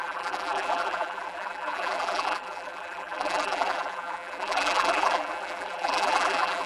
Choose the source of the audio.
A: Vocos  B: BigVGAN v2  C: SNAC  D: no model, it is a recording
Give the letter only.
B